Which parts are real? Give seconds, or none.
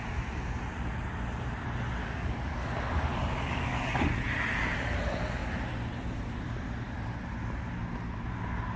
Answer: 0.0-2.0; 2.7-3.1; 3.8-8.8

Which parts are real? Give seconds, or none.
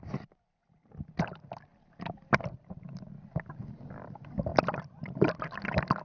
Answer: 0.0-6.0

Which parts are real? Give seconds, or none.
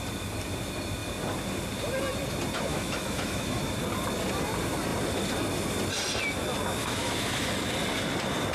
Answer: 0.0-2.7; 3.6-6.8; 7.5-8.5